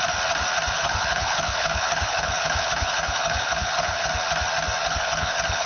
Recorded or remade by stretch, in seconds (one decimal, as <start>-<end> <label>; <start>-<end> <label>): 0.0-0.7 recorded; 0.7-4.1 remade; 4.1-4.8 recorded; 4.8-5.7 remade